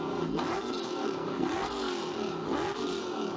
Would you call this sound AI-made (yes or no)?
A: yes